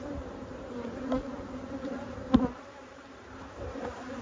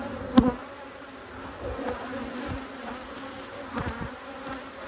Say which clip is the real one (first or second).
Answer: second